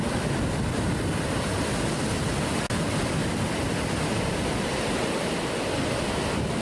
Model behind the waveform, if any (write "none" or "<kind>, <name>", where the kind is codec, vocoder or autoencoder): none